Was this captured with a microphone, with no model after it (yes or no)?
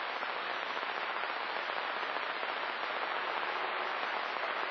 yes